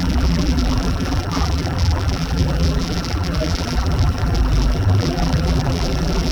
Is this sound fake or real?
fake